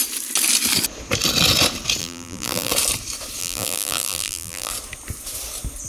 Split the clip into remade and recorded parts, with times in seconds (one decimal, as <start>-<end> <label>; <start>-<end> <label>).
0.0-2.0 recorded; 2.0-2.7 remade; 2.7-3.4 recorded; 3.4-4.7 remade; 4.7-5.9 recorded